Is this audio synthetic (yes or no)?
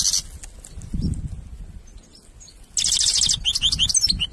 no